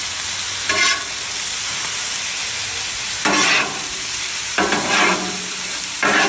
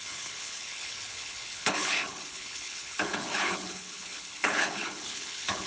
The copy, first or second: second